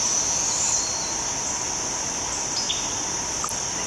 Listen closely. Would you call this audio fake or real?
real